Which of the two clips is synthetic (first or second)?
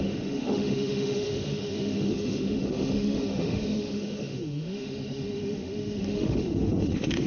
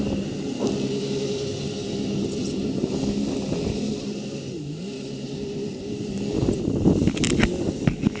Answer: first